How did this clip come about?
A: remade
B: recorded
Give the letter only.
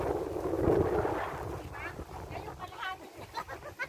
B